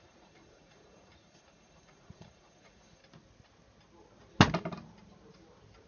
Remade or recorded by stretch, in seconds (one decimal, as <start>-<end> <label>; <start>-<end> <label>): 0.0-3.0 remade; 3.0-5.9 recorded